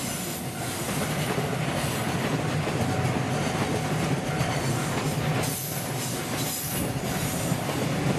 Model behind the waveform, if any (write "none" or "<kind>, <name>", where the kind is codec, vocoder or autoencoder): none